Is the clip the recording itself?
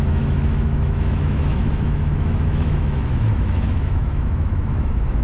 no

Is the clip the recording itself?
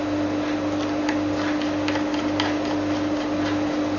yes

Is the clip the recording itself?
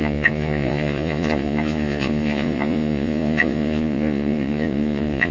no